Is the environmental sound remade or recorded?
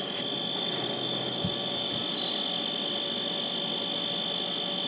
recorded